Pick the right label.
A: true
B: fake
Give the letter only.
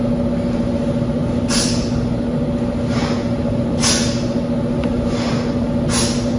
A